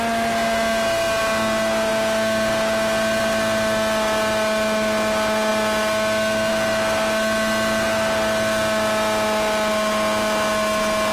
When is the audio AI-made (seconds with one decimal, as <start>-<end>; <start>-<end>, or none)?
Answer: none